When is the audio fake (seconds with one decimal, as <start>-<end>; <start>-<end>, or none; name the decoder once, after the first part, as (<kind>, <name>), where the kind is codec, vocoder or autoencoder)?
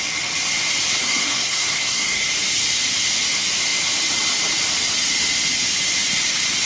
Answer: 1.0-2.3 (codec, SNAC)